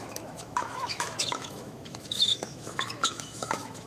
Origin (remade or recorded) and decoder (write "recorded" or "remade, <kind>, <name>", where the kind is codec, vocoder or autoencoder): remade, autoencoder, DAC-VAE